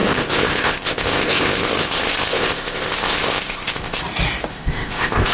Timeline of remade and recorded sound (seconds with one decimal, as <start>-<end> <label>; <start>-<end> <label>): 0.0-4.0 remade; 4.0-4.5 recorded; 4.5-5.3 remade